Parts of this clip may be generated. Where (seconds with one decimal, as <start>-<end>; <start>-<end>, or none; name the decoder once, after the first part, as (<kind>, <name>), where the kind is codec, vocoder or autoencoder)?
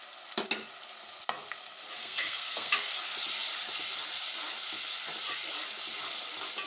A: 2.0-2.9 (codec, SNAC)